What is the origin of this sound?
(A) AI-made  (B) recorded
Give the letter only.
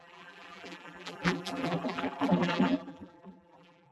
A